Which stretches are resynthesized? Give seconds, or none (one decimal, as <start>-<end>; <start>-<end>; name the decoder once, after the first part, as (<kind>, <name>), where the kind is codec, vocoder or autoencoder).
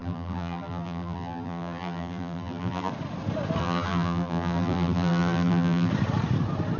0.0-2.9 (vocoder, BigVGAN v2); 3.6-5.9